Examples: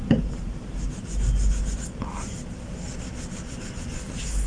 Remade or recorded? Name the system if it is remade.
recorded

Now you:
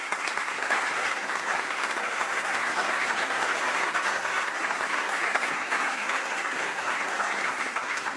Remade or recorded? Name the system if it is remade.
remade, codec, SNAC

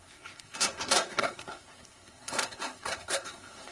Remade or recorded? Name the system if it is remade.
remade, codec, SNAC